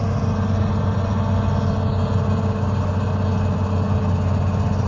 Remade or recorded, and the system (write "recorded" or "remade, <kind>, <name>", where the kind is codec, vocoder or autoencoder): recorded